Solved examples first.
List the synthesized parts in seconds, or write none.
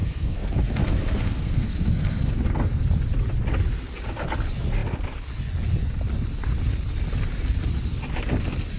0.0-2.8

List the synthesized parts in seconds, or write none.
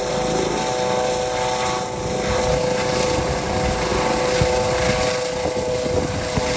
none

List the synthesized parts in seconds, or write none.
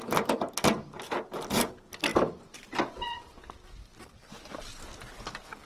none